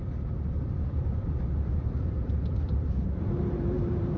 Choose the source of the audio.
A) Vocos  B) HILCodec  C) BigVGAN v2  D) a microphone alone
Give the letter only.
C